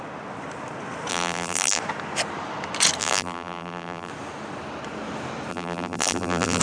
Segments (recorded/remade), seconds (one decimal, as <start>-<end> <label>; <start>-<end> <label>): 0.0-1.1 recorded; 1.1-1.8 remade; 1.8-3.0 recorded; 3.0-4.1 remade; 4.1-5.5 recorded; 5.5-6.6 remade